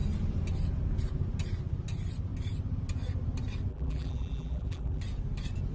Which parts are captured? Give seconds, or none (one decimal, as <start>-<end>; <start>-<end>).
0.0-3.7; 5.0-5.7